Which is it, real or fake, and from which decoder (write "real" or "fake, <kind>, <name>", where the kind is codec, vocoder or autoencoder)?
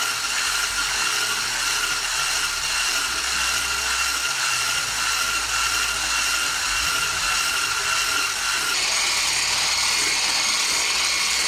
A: real